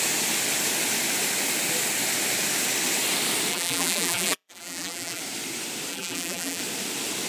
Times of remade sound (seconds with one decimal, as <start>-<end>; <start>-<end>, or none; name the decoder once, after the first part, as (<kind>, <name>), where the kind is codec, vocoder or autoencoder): 3.5-5.2 (vocoder, BigVGAN v2); 5.9-6.6